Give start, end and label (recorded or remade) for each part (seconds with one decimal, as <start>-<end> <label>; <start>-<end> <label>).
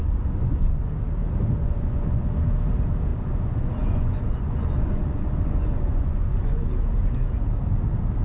0.0-0.8 remade; 0.8-1.6 recorded; 1.6-2.3 remade; 2.3-3.1 recorded; 3.1-6.7 remade; 6.7-8.2 recorded